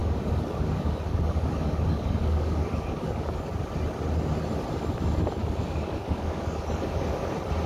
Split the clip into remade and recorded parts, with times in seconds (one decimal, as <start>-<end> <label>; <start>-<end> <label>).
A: 0.0-3.5 remade; 3.5-5.4 recorded; 5.4-7.3 remade; 7.3-7.7 recorded